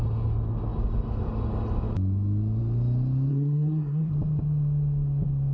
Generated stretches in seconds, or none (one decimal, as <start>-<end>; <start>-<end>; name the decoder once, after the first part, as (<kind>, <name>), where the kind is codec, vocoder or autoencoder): 3.3-4.1 (codec, SNAC)